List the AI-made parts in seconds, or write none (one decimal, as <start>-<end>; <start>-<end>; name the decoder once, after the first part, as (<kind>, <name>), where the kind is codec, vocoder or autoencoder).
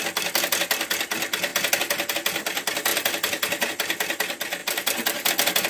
2.9-3.7 (vocoder, BigVGAN v2); 4.6-5.3